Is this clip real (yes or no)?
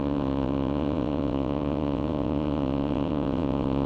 no